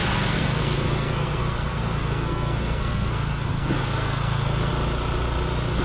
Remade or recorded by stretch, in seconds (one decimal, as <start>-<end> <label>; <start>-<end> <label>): 0.0-4.7 remade; 4.7-5.8 recorded

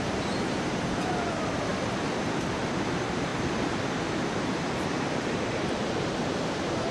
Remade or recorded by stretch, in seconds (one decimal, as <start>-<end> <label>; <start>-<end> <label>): 0.0-1.7 remade; 1.7-2.6 recorded; 2.6-6.9 remade

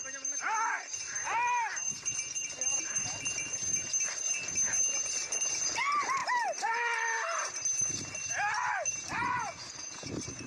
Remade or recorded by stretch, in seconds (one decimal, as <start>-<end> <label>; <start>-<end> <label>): 0.0-9.2 recorded; 9.2-10.1 remade; 10.1-10.5 recorded

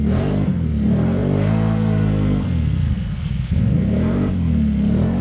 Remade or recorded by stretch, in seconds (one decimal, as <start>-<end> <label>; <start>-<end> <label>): 0.0-5.2 remade

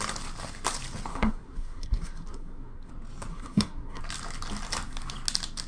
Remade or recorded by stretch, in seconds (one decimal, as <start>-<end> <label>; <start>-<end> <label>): 0.0-1.1 recorded; 1.1-2.9 remade; 2.9-3.3 recorded; 3.3-4.0 remade; 4.0-5.7 recorded

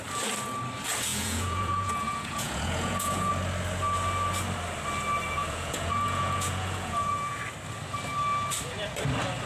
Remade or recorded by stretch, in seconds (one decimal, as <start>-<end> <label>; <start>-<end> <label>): 0.0-1.1 recorded; 1.1-3.3 remade; 3.3-5.4 recorded; 5.4-7.4 remade; 7.4-9.5 recorded

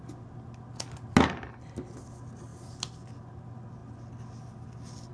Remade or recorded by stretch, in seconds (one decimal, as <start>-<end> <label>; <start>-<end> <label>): 0.0-5.1 recorded